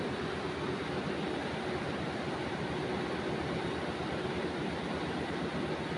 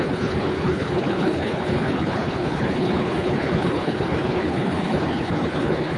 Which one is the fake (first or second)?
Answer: second